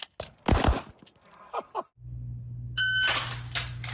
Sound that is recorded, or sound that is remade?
recorded